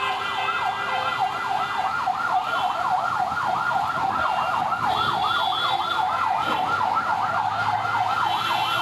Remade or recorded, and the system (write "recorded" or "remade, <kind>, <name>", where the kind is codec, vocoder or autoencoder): recorded